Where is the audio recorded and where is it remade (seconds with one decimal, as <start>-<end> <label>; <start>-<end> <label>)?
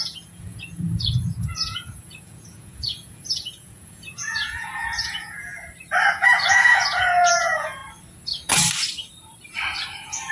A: 0.0-5.5 remade; 5.5-6.1 recorded; 6.1-7.8 remade; 7.8-10.3 recorded